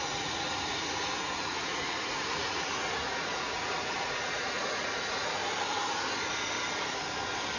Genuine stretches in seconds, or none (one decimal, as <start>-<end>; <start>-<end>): 5.4-7.6